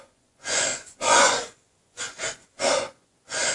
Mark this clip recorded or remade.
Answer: remade